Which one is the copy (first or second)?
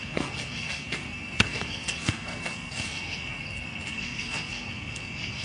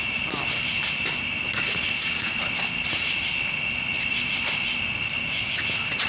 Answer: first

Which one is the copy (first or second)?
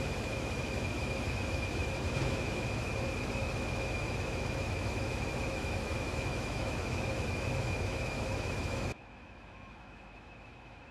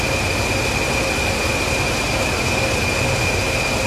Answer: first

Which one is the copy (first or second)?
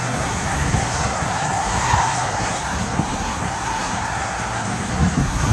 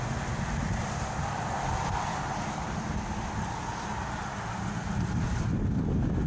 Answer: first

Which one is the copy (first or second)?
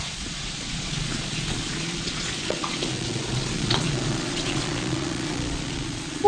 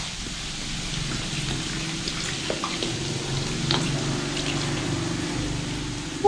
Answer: first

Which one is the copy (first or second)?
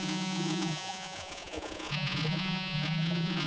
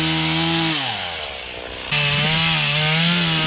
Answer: first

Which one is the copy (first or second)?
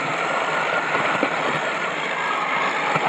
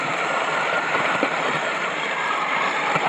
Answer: second